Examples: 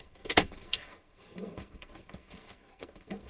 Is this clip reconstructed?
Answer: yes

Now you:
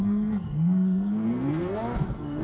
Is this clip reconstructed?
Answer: yes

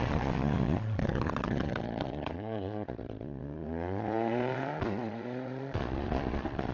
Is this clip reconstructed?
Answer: yes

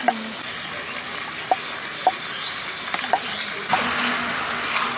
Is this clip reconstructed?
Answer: no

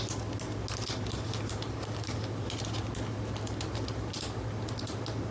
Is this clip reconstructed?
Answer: no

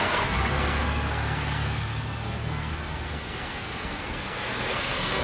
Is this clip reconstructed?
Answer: yes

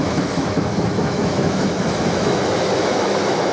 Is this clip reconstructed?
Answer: yes